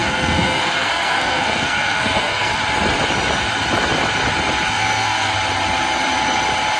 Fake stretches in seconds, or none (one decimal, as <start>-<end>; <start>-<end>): 0.0-2.6; 4.7-5.3